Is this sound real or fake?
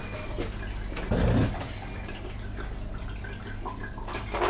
real